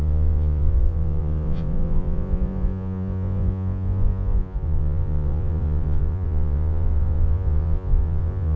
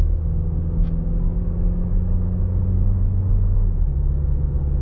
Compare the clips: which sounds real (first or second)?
second